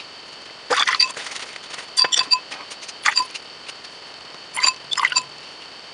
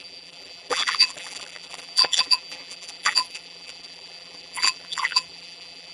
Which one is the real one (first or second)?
first